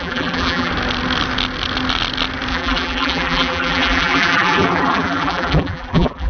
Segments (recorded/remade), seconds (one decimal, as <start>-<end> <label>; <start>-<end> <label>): 0.0-0.7 remade; 0.7-2.5 recorded; 2.5-6.3 remade